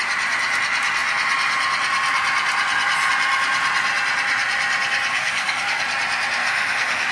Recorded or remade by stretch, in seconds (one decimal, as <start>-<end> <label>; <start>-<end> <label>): 0.0-5.1 recorded; 5.1-5.8 remade; 5.8-6.4 recorded; 6.4-7.1 remade